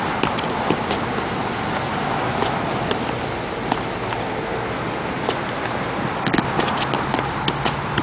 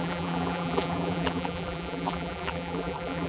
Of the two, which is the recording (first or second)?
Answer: first